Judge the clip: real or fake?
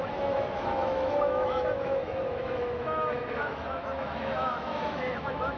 fake